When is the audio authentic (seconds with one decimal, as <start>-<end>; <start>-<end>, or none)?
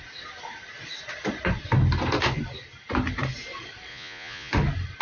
0.0-3.9; 4.5-5.0